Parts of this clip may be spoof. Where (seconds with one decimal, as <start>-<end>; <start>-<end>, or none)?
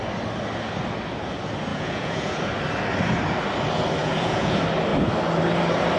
1.7-2.5; 4.0-4.5